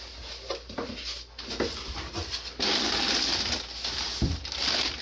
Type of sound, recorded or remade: recorded